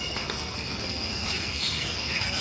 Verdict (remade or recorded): remade